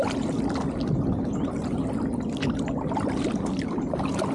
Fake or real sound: real